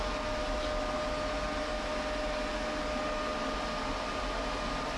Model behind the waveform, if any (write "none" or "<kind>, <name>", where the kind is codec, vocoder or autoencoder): none